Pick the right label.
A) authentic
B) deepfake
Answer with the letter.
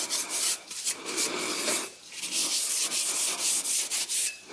B